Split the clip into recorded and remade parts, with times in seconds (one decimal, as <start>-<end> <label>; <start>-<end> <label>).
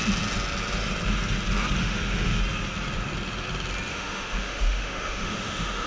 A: 0.0-1.8 recorded; 1.8-2.4 remade; 2.4-3.9 recorded; 3.9-5.9 remade